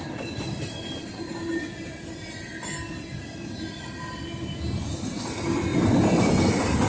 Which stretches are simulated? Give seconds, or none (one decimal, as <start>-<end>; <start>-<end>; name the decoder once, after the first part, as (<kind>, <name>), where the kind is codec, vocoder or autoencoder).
none